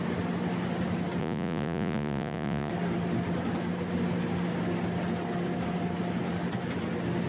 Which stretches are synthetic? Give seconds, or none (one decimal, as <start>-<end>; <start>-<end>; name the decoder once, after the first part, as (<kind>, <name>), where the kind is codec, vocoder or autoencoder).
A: 1.2-2.7 (vocoder, Vocos)